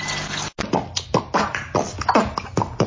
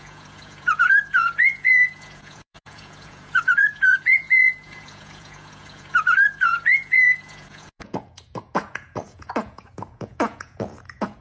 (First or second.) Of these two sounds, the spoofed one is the second